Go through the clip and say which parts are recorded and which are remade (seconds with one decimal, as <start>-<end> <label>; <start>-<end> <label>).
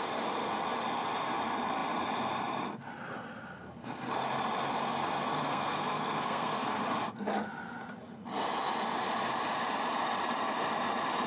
0.0-5.4 recorded; 5.4-6.8 remade; 6.8-11.3 recorded